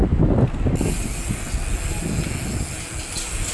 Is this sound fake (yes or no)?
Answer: no